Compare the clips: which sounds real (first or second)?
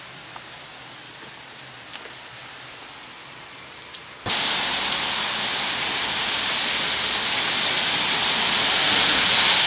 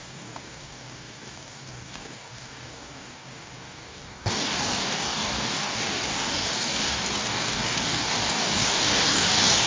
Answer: first